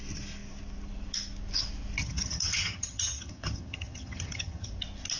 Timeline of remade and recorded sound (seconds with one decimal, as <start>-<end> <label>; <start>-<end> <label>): 0.0-2.0 recorded; 2.0-4.7 remade; 4.7-5.2 recorded